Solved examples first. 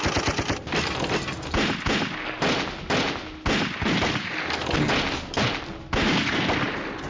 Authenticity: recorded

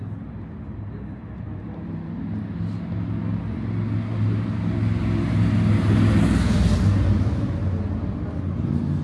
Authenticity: recorded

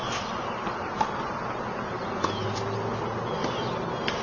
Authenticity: recorded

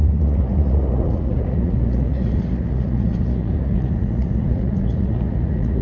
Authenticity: remade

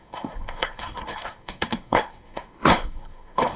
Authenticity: remade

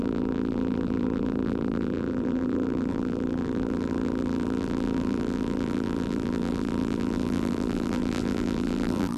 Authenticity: remade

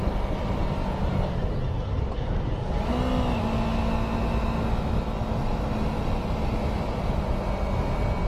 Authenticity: recorded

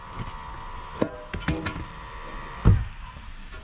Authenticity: recorded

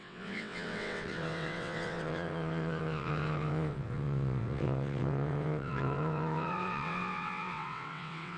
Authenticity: remade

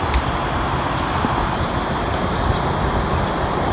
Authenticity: recorded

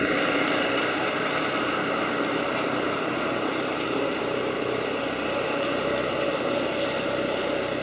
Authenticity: remade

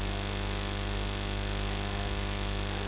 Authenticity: recorded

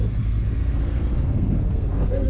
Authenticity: remade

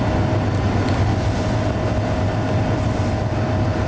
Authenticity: recorded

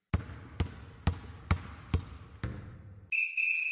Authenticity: recorded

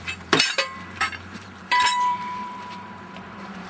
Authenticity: remade